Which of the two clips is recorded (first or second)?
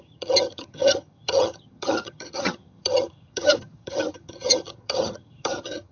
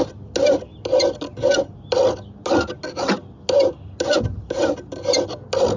second